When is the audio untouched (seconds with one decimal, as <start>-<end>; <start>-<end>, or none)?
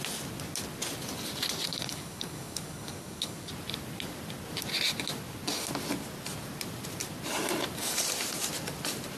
0.0-1.7; 3.5-9.2